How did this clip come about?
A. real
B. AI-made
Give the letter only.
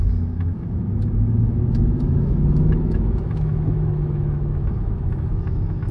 B